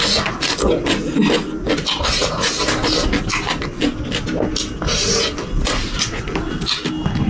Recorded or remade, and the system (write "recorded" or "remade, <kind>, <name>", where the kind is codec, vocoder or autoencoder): recorded